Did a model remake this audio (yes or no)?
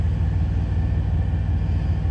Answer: no